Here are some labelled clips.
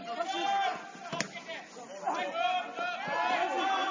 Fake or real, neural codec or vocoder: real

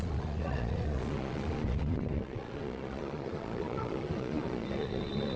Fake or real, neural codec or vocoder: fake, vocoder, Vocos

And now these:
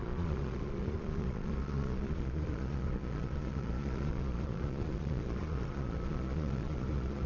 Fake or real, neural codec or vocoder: fake, vocoder, Vocos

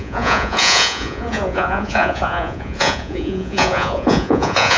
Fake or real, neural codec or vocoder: fake, vocoder, Vocos